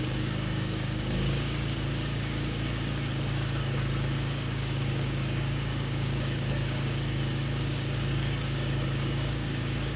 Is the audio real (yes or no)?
no